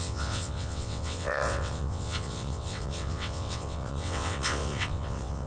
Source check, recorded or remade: remade